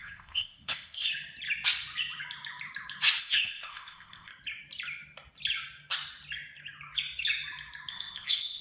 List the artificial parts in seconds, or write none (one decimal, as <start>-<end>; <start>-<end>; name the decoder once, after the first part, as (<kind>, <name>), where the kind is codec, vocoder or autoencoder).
0.0-1.1 (codec, ZipCodec); 3.2-4.3; 7.9-8.6